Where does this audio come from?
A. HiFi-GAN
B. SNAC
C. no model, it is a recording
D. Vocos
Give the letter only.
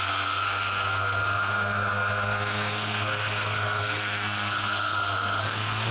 B